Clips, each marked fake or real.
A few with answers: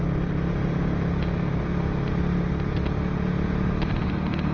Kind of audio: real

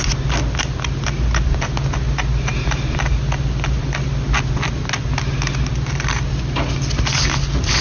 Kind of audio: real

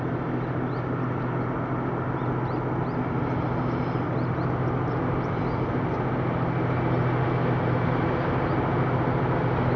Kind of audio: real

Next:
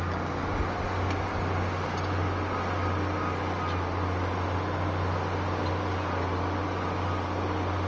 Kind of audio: real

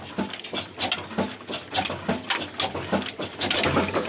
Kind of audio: real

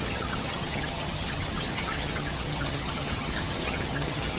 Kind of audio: fake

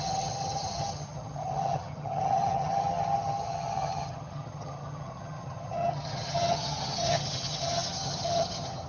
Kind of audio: fake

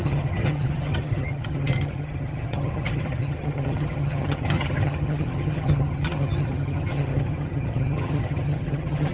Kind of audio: fake